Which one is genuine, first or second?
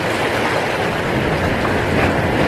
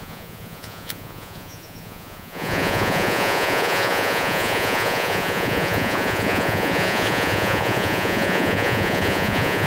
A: first